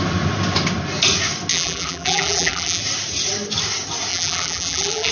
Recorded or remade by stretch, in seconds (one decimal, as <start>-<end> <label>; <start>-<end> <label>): 0.0-1.5 recorded; 1.5-2.8 remade; 2.8-4.1 recorded; 4.1-5.1 remade